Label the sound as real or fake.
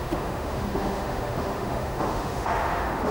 fake